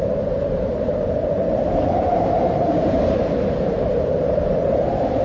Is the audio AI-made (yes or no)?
yes